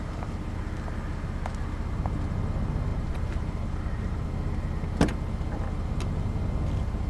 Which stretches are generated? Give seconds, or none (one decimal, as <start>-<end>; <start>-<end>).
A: 2.9-4.3